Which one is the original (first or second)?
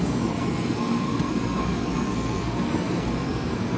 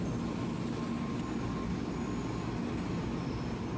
second